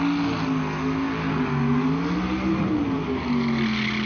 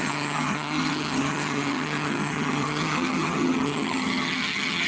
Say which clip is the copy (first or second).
second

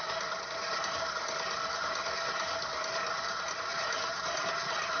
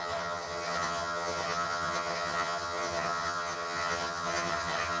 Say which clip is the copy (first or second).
second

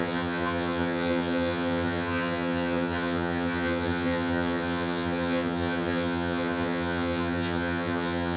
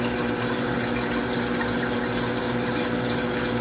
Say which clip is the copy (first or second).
first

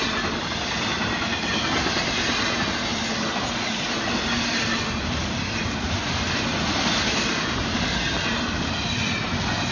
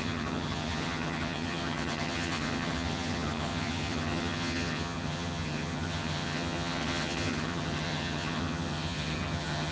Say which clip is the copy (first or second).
second